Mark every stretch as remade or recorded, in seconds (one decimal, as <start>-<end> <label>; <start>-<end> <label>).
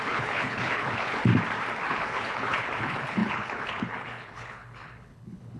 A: 0.0-1.3 remade; 1.3-1.9 recorded; 1.9-5.6 remade